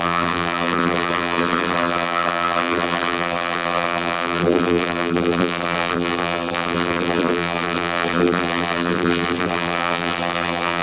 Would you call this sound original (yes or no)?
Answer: no